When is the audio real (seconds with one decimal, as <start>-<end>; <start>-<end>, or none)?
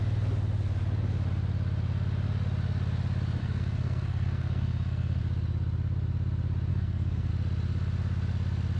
0.0-3.4; 5.2-6.7; 7.3-8.8